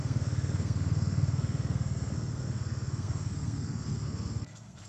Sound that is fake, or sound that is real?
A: fake